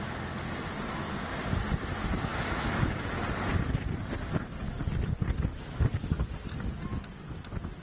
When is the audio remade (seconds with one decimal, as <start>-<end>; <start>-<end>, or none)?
2.3-3.0